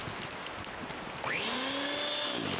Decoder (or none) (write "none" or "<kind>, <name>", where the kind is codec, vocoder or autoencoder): none